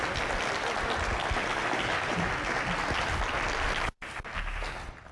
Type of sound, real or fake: real